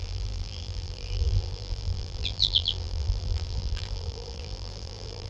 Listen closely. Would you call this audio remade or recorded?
remade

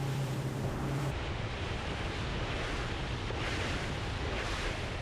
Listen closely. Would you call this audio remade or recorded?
remade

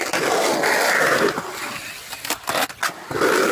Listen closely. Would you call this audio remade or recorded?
recorded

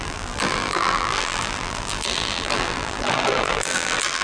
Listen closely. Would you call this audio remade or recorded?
remade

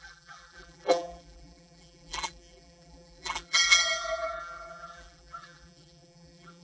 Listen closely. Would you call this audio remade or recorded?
remade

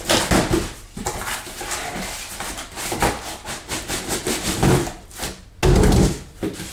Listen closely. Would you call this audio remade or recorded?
recorded